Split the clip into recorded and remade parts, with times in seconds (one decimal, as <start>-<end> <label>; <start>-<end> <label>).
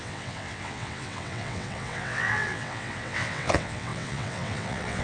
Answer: 0.0-5.0 remade